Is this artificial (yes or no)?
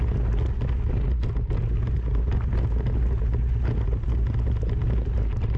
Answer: no